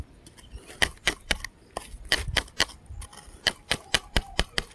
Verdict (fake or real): real